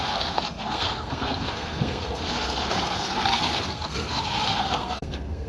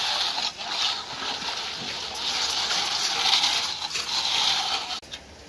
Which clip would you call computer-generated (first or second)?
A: first